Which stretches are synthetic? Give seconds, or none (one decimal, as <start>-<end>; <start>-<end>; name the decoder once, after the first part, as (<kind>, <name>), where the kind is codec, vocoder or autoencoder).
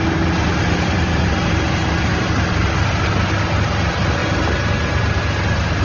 none